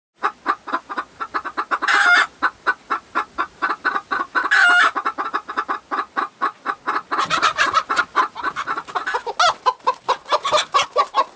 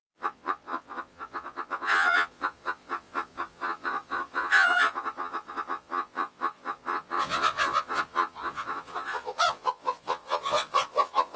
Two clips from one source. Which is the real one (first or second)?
first